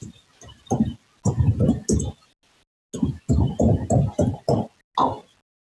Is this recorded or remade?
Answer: recorded